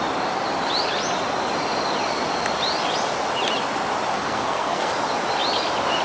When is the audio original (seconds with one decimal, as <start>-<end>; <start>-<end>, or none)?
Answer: 0.0-4.1; 4.9-6.0